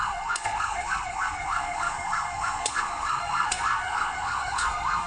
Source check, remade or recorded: remade